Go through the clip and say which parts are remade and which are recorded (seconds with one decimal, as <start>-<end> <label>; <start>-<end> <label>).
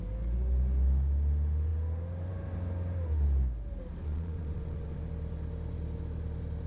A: 0.0-4.0 recorded; 4.0-5.0 remade; 5.0-6.7 recorded